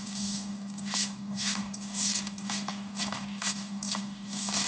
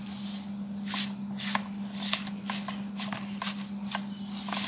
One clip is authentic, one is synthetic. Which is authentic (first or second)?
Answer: second